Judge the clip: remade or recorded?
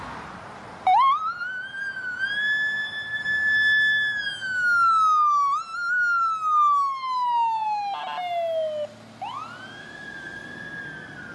recorded